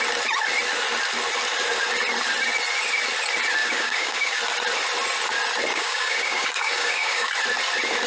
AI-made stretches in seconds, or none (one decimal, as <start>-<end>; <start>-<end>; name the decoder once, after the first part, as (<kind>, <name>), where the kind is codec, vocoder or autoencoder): 3.6-4.4 (codec, DAC); 5.7-7.3

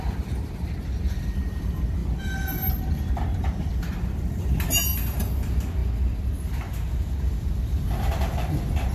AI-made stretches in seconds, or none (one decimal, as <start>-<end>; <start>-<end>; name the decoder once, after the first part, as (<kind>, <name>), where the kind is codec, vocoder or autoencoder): none